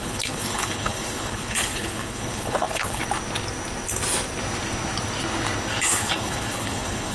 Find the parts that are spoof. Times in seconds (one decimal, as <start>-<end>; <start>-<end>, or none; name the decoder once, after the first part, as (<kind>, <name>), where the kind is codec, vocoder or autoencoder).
0.0-3.0 (codec, HILCodec); 5.7-7.1